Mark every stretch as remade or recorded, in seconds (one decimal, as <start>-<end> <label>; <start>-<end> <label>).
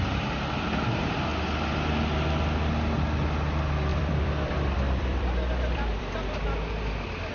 0.0-3.9 recorded; 3.9-6.0 remade; 6.0-7.3 recorded